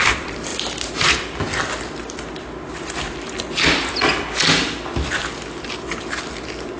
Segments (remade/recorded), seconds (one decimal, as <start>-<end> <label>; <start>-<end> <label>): 0.0-6.8 recorded